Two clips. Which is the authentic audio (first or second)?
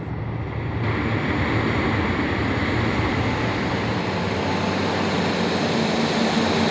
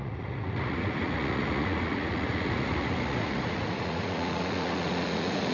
first